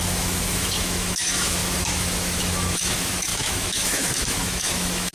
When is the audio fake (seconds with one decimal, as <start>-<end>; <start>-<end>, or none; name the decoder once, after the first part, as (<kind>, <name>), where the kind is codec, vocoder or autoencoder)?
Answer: 0.0-5.1 (autoencoder, DAC-VAE)